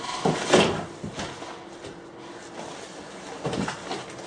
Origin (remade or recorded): recorded